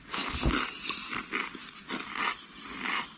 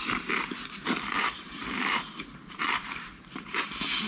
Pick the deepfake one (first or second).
second